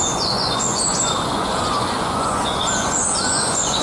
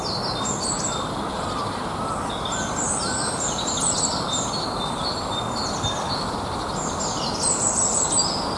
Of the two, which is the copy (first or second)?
first